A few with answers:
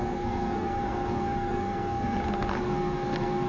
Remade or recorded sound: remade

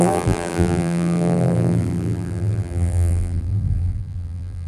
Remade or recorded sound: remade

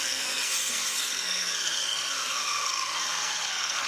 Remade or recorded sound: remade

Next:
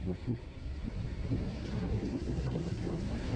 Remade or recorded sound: remade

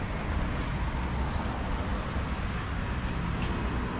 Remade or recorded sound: recorded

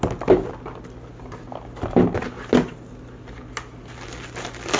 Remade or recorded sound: recorded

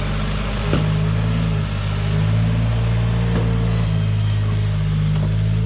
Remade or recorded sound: recorded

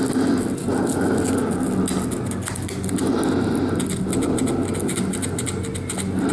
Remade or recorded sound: recorded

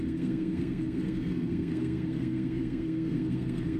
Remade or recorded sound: remade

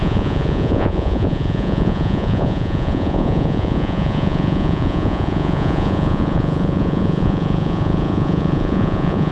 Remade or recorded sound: remade